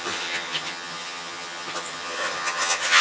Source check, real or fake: fake